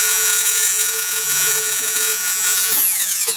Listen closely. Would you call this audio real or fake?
fake